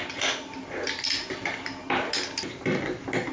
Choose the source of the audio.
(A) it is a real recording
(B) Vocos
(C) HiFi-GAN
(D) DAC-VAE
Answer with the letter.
A